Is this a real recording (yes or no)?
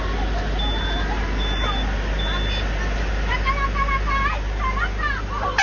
yes